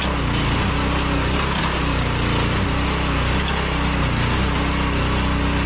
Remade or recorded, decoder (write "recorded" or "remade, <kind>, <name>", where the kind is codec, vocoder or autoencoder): recorded